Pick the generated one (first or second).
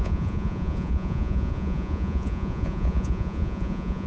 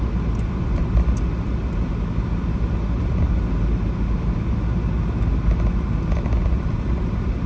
first